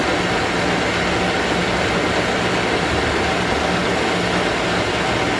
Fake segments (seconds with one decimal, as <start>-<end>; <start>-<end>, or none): none